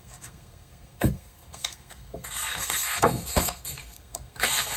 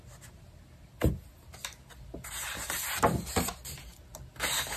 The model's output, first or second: first